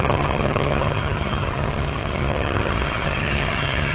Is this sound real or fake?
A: fake